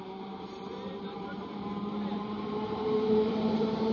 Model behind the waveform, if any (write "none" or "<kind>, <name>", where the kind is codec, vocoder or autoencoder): vocoder, BigVGAN v2